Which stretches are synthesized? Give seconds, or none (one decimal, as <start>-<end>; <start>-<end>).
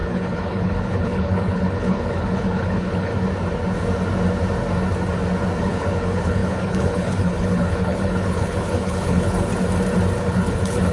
0.0-3.1; 5.6-9.5; 10.2-10.9